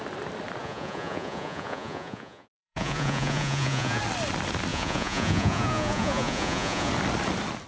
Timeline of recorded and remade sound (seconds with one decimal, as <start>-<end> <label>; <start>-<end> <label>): 0.0-0.6 recorded; 0.6-4.0 remade; 4.0-4.7 recorded; 4.7-6.9 remade; 6.9-7.7 recorded